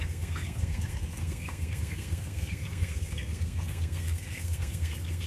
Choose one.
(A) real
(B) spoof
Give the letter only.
B